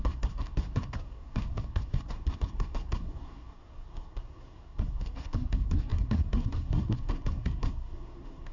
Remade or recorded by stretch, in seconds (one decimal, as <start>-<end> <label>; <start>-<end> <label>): 0.0-8.5 remade